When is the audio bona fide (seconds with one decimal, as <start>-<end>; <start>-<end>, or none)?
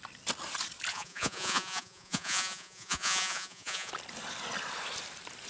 0.0-0.9; 3.9-5.5